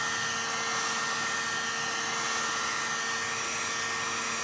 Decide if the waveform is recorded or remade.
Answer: recorded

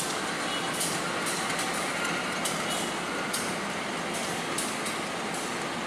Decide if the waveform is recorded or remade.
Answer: recorded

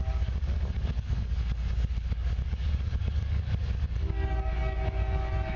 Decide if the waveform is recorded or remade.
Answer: remade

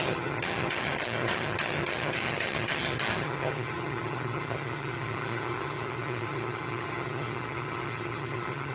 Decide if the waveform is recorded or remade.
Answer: remade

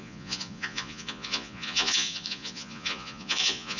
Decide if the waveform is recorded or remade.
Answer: remade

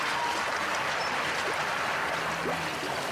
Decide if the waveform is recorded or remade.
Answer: recorded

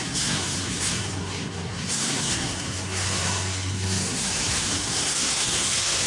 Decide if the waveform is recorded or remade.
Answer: remade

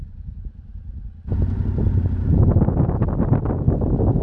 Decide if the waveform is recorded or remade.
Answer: recorded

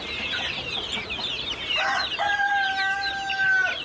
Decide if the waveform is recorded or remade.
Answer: recorded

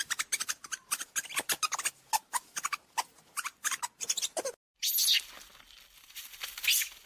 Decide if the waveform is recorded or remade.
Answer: recorded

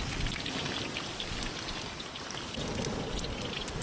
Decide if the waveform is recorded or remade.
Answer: recorded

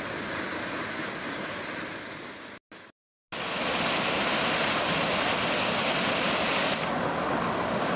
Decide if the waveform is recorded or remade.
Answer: recorded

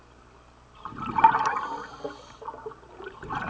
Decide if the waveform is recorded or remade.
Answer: recorded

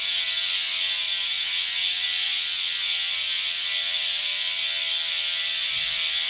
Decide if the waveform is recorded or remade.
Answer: recorded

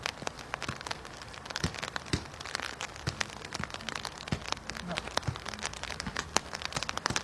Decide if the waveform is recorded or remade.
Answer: recorded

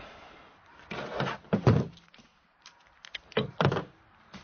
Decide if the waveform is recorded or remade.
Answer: recorded